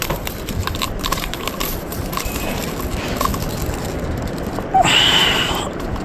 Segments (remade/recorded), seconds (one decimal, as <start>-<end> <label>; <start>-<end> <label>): 0.0-2.6 remade; 2.6-5.0 recorded; 5.0-6.0 remade